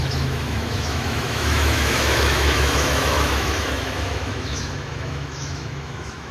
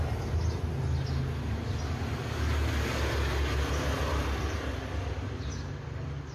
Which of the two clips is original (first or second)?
second